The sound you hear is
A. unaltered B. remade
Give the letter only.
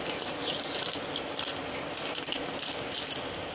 A